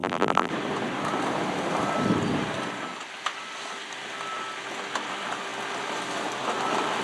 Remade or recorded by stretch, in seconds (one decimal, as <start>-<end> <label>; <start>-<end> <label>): 0.0-0.5 remade; 0.5-7.0 recorded